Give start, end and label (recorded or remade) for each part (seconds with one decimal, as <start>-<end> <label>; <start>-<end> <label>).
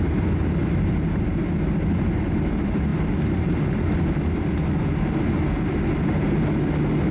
0.0-7.1 recorded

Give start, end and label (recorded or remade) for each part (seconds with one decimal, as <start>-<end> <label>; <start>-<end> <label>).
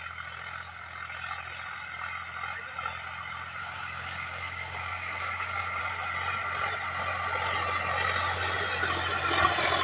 0.0-3.6 recorded; 3.6-5.8 remade; 5.8-9.8 recorded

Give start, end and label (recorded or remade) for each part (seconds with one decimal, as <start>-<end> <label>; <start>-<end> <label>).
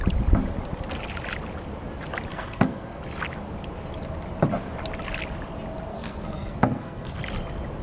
0.0-2.3 recorded; 2.3-3.0 remade; 3.0-5.9 recorded; 5.9-7.2 remade; 7.2-7.8 recorded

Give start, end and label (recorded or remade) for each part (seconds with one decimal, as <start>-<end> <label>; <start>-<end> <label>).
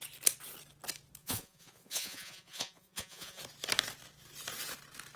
0.0-1.2 recorded; 1.2-3.4 remade; 3.4-5.2 recorded